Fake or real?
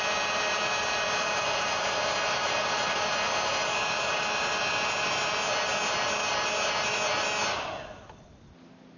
real